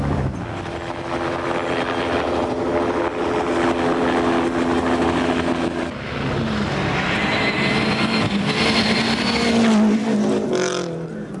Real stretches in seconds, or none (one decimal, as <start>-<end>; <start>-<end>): 0.0-11.4